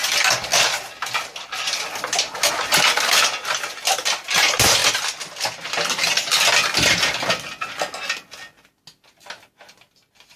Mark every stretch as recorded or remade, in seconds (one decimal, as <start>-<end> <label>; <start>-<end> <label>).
0.0-2.5 remade; 2.5-10.4 recorded